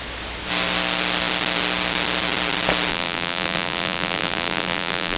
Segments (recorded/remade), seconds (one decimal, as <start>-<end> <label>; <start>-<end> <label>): 0.0-2.9 recorded; 2.9-5.2 remade